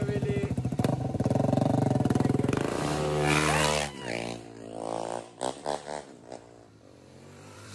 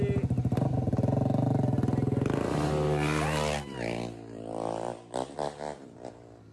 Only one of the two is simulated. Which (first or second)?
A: first